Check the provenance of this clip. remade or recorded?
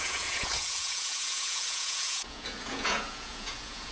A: remade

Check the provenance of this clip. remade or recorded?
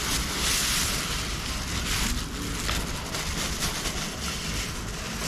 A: recorded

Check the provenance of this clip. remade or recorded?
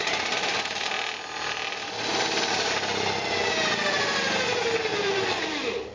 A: recorded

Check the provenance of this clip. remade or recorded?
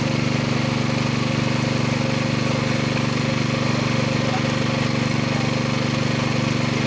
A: recorded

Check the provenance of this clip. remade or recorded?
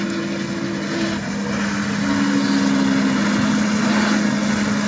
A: recorded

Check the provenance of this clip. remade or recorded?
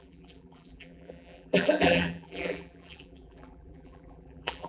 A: remade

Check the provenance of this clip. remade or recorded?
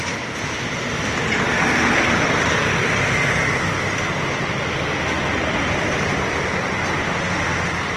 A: recorded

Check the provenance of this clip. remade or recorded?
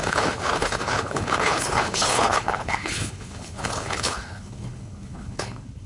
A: remade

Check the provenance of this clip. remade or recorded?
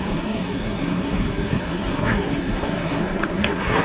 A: remade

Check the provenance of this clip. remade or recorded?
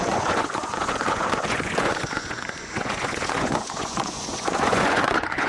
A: remade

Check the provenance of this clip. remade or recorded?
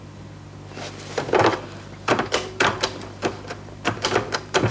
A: remade